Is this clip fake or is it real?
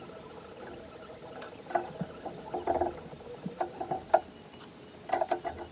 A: real